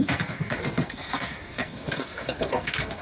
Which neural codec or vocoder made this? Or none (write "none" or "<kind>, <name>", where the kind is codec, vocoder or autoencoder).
codec, SNAC